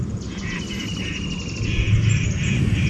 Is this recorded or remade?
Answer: recorded